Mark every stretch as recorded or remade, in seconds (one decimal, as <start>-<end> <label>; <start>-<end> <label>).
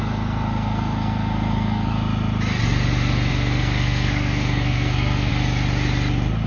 0.0-1.9 remade; 1.9-3.3 recorded; 3.3-5.3 remade; 5.3-6.5 recorded